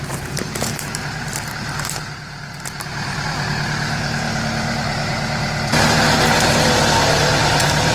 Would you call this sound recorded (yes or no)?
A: no